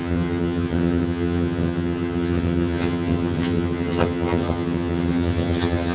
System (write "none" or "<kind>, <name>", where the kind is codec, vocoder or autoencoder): vocoder, HiFi-GAN